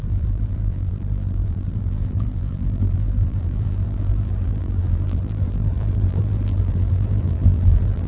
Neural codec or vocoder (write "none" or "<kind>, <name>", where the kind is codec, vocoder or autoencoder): vocoder, BigVGAN v2